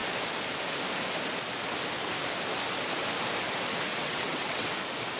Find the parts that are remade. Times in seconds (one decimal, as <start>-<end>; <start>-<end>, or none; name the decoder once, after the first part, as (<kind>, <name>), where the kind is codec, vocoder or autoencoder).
3.9-4.7 (vocoder, WaveNeXt)